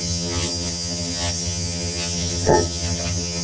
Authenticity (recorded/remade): remade